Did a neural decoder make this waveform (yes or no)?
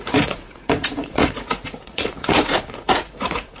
yes